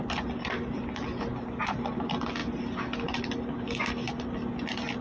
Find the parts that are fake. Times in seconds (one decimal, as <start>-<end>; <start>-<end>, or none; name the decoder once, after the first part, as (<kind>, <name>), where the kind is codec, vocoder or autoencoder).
none